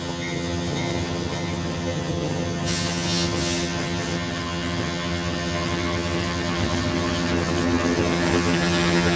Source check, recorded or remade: remade